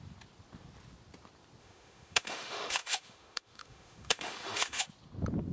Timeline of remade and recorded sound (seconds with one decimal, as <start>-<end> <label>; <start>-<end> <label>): 0.0-1.6 recorded; 1.6-4.9 remade; 4.9-5.5 recorded